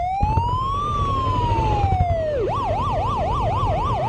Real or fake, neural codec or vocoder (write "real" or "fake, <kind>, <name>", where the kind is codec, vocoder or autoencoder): real